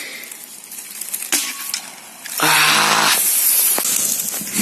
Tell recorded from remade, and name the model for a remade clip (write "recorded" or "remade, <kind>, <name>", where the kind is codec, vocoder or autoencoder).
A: recorded